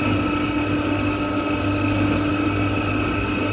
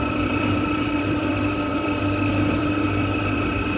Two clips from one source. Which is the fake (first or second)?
second